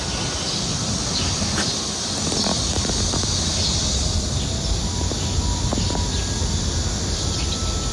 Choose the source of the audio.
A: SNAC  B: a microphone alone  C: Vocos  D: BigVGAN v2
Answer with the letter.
B